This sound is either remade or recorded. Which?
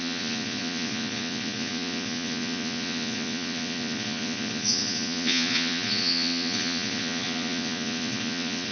remade